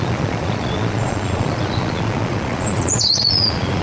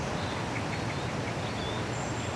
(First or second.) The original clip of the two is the second